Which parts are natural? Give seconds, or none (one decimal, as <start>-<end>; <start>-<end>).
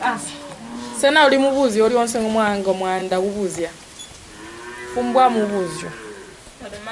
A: 0.0-6.9